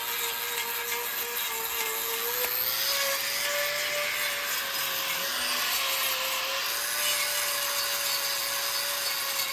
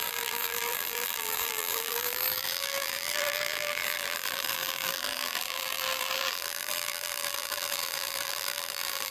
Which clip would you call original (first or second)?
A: first